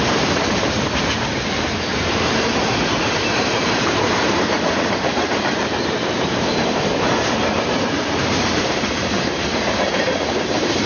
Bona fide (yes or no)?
no